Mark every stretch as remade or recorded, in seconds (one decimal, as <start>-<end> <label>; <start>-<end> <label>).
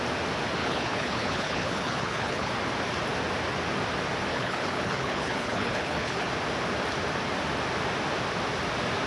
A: 0.0-0.6 recorded; 0.6-2.5 remade; 2.5-4.3 recorded; 4.3-6.3 remade; 6.3-9.1 recorded